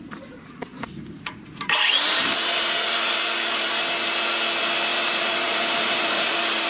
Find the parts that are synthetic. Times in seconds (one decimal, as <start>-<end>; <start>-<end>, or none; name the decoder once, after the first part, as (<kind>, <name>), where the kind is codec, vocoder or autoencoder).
0.7-3.7 (vocoder, BigVGAN v2); 4.9-6.7